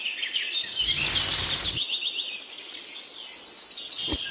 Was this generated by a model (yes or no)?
no